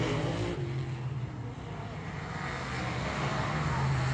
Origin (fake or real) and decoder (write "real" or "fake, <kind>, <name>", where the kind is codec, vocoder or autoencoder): real